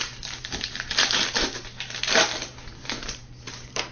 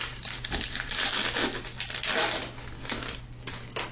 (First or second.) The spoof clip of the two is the first